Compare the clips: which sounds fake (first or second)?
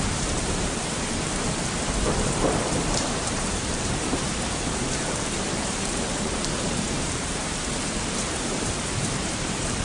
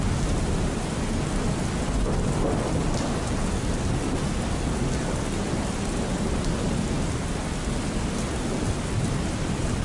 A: first